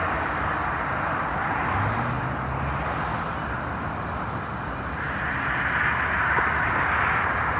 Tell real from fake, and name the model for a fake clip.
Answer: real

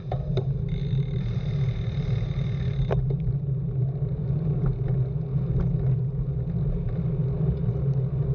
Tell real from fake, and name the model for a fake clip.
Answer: real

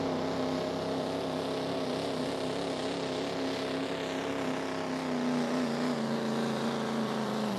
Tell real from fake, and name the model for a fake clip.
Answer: real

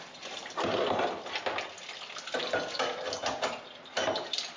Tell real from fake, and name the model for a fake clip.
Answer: real